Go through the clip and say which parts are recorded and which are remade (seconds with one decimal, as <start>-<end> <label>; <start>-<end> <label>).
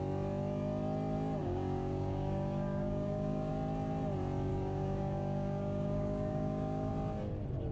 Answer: 0.0-1.4 recorded; 1.4-3.5 remade; 3.5-4.5 recorded; 4.5-6.9 remade; 6.9-7.7 recorded